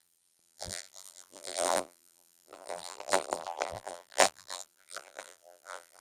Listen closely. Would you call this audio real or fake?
fake